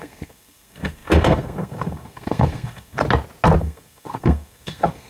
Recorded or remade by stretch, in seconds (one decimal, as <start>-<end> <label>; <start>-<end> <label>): 0.0-3.0 remade; 3.0-3.6 recorded; 3.6-5.1 remade